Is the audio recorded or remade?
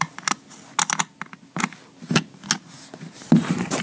recorded